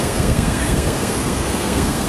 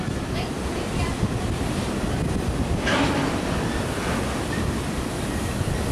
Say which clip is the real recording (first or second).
second